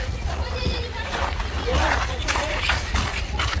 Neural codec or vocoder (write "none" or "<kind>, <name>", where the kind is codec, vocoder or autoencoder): vocoder, Vocos